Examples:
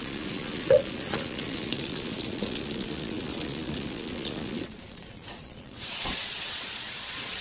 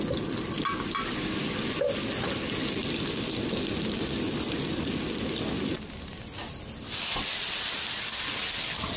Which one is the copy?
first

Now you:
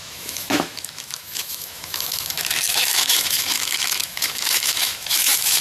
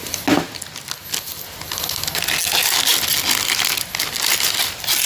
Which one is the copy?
first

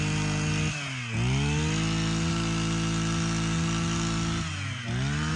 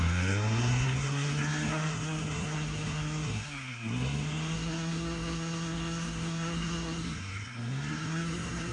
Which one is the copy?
second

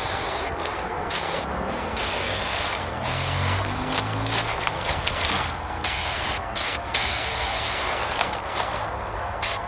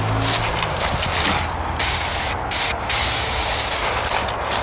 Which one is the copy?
first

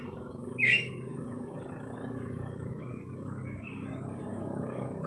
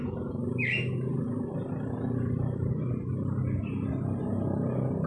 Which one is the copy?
first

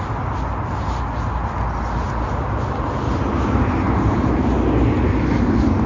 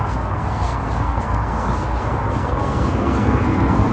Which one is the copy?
second